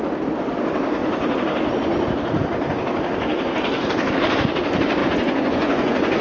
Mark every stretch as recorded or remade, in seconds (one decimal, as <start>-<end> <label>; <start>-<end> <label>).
0.0-5.0 recorded; 5.0-6.2 remade